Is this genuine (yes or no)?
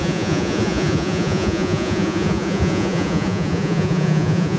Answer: no